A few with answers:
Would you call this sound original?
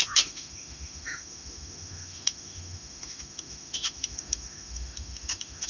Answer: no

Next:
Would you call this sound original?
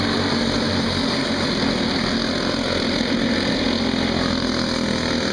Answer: yes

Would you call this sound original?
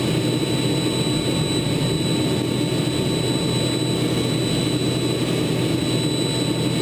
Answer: yes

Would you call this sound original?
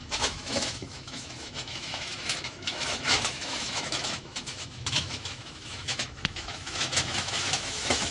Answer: no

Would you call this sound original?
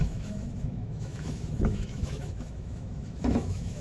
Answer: no